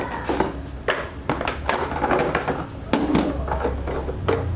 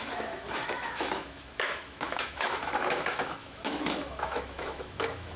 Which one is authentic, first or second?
first